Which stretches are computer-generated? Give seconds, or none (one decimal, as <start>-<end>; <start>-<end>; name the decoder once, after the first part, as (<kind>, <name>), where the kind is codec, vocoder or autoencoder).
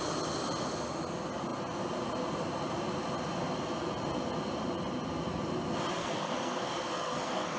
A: 6.0-7.6 (codec, SNAC)